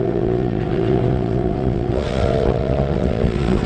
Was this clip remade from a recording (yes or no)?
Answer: yes